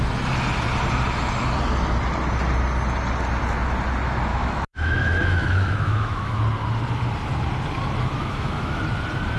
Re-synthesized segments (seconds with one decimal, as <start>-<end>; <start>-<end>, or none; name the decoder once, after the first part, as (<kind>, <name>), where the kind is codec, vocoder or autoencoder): 4.3-6.4 (autoencoder, DAC-VAE); 8.2-8.8